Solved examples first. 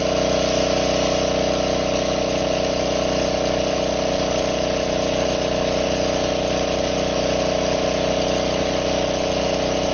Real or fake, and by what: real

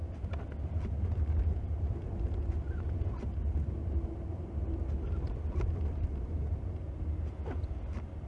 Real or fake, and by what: real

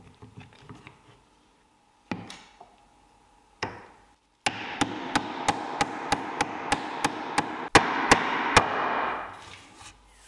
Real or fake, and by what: real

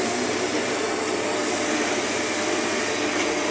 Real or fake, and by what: real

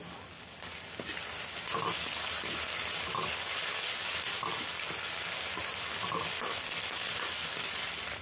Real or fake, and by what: real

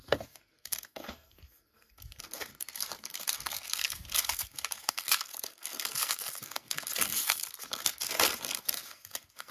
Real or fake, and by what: fake, codec, SNAC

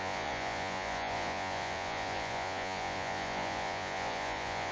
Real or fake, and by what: fake, vocoder, Vocos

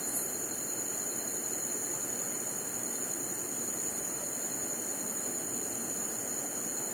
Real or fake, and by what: real